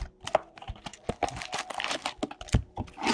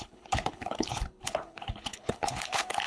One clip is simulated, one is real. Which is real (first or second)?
first